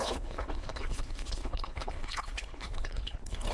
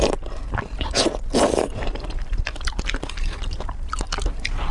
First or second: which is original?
second